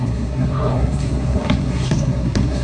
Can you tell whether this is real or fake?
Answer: fake